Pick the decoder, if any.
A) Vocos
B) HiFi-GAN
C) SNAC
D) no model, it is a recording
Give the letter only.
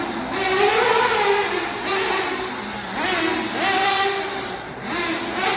D